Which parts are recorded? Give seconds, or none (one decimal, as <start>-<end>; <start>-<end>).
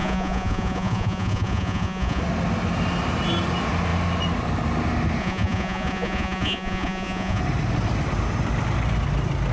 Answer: 2.2-5.2; 7.4-9.5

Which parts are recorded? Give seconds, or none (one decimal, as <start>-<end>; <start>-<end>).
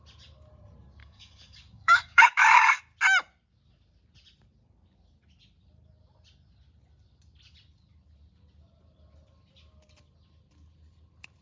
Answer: 0.0-1.0; 2.8-11.4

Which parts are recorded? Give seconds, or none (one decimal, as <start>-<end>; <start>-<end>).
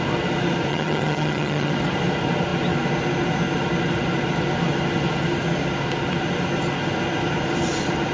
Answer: 0.0-0.7; 1.7-8.1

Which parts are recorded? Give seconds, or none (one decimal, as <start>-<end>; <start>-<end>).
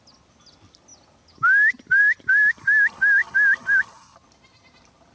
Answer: 0.0-5.1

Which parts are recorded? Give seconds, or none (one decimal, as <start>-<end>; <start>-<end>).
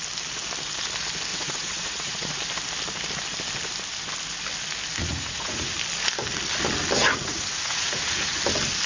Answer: 0.0-1.3; 2.4-5.0; 5.7-7.0; 8.4-8.9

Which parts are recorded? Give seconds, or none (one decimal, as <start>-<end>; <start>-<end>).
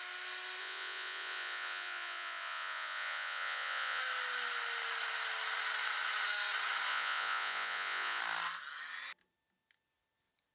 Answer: 0.0-0.6; 4.0-6.9; 8.2-10.5